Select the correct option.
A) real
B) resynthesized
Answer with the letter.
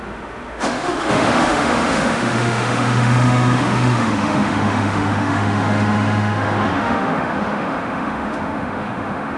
B